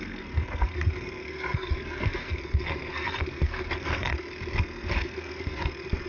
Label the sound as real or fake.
fake